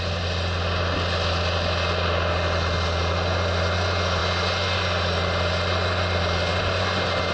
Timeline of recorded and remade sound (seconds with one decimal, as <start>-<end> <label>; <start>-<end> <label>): 0.0-7.3 recorded